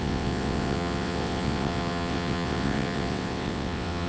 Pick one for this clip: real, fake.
fake